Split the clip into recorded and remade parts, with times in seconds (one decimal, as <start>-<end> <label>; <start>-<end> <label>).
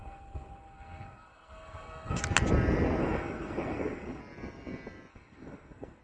0.0-2.2 remade; 2.2-3.0 recorded; 3.0-4.2 remade; 4.2-5.1 recorded; 5.1-6.0 remade